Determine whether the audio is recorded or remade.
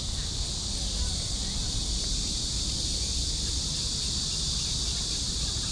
recorded